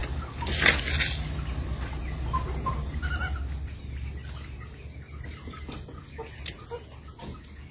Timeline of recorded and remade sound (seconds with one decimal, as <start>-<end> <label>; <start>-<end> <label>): 0.0-7.7 recorded